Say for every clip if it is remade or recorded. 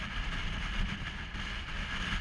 recorded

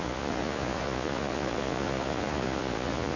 remade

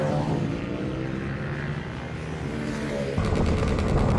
recorded